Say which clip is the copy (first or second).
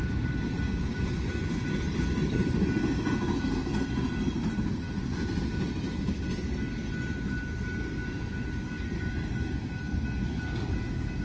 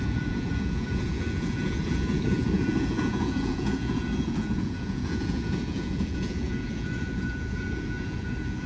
second